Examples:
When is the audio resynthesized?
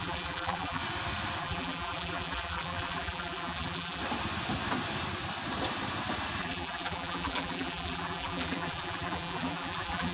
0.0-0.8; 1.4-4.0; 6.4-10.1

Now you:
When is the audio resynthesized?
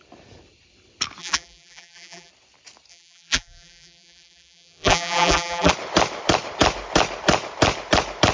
1.2-2.3; 2.9-5.7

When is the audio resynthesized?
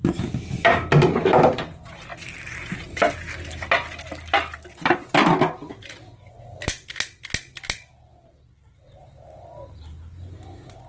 none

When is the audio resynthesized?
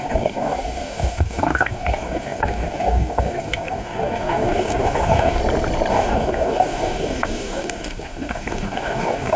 0.0-5.4; 5.9-9.4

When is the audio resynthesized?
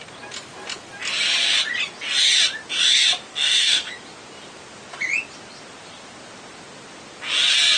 3.3-3.9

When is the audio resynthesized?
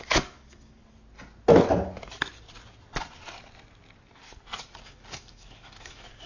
0.0-0.8; 4.6-6.3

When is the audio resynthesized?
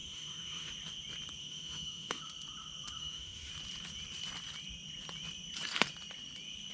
0.0-0.7; 1.4-2.2; 3.0-3.5